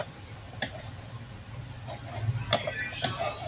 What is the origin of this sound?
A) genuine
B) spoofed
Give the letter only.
B